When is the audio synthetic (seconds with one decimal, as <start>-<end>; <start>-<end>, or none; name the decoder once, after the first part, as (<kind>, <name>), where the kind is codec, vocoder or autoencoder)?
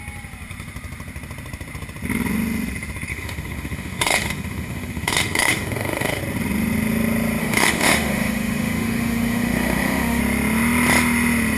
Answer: 3.1-6.2 (autoencoder, DAC-VAE); 7.4-10.2